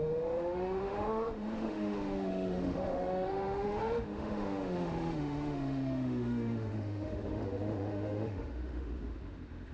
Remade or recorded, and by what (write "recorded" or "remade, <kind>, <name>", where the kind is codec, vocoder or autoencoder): remade, autoencoder, DAC-VAE